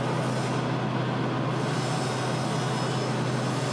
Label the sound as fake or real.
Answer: real